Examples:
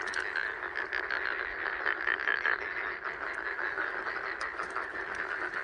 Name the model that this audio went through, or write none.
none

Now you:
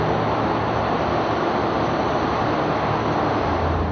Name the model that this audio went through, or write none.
none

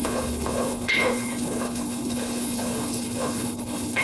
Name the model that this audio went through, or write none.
codec, HILCodec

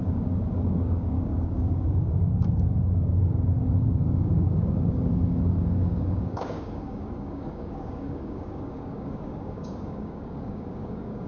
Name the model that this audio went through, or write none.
codec, DAC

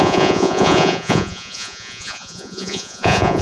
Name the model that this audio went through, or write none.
vocoder, Vocos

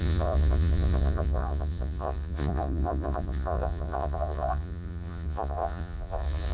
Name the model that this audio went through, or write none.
vocoder, Vocos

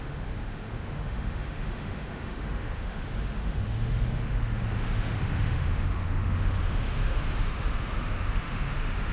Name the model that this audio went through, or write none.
autoencoder, DAC-VAE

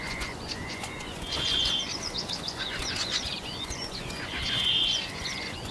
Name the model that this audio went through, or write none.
vocoder, Vocos